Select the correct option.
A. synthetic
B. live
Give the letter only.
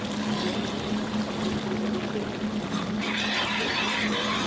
B